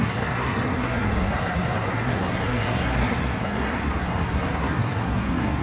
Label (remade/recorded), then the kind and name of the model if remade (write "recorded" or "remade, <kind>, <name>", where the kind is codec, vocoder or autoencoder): remade, codec, SNAC